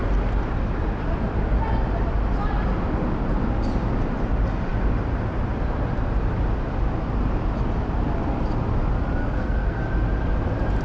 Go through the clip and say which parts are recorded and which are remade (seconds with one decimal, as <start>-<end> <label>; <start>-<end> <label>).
0.0-9.2 recorded; 9.2-9.8 remade; 9.8-10.8 recorded